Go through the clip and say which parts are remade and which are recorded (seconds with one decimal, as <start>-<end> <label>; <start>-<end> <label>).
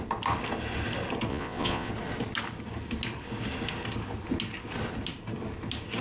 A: 0.0-1.3 recorded; 1.3-1.9 remade; 1.9-6.0 recorded